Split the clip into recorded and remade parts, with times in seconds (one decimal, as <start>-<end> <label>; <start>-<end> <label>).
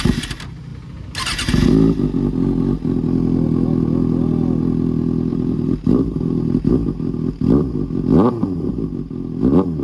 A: 0.0-5.3 recorded; 5.3-6.7 remade; 6.7-9.8 recorded